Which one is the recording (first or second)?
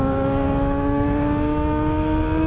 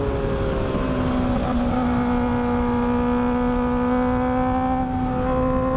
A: second